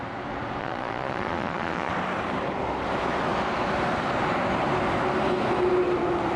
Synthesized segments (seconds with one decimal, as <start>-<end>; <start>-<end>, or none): 0.6-1.9